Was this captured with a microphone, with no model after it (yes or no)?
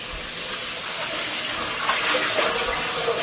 yes